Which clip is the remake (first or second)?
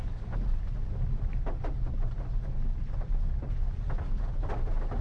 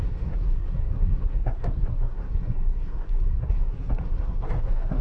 second